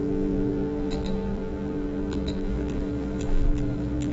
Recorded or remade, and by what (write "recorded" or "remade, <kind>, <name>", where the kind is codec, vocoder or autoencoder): remade, vocoder, BigVGAN v2